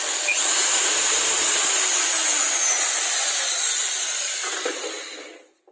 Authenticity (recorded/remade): recorded